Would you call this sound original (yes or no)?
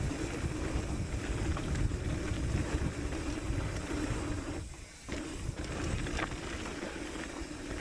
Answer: yes